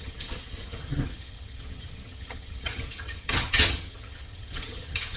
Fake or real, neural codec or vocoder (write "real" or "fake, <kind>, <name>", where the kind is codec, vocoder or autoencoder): fake, vocoder, HiFi-GAN